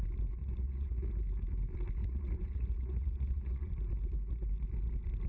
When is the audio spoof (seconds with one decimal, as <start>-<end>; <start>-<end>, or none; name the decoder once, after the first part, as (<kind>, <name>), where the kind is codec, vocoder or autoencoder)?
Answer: 0.4-1.1 (vocoder, Vocos); 2.0-3.7